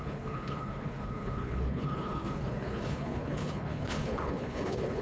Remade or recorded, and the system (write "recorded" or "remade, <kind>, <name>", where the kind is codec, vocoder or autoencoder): remade, codec, HILCodec